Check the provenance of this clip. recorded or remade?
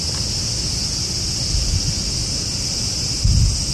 recorded